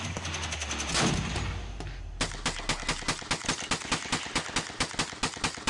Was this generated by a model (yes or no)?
no